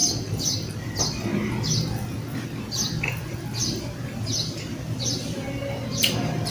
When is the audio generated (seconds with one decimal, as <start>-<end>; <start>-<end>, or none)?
none